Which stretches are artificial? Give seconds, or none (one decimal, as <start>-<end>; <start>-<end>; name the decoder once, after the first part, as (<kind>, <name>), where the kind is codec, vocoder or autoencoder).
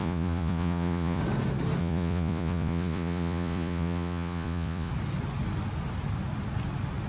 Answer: 0.0-1.2 (vocoder, Vocos); 1.8-4.9